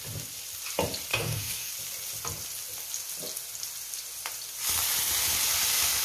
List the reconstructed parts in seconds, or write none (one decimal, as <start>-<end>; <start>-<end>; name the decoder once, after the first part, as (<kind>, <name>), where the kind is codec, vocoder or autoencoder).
1.1-1.7 (codec, DAC)